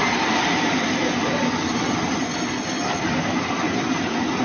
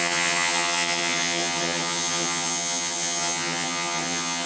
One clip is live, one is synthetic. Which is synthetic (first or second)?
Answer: second